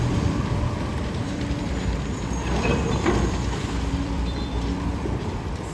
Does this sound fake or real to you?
fake